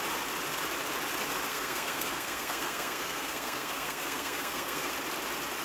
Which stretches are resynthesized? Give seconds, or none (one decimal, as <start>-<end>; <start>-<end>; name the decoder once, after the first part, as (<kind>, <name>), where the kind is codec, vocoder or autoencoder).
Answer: 1.5-4.9 (codec, SNAC)